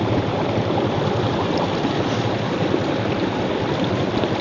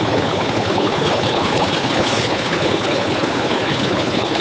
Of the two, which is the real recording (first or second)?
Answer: first